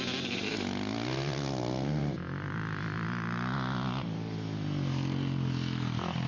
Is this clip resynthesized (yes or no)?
no